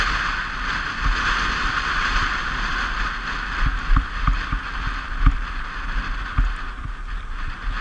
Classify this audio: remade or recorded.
recorded